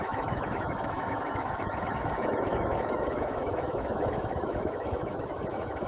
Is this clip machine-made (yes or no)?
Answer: yes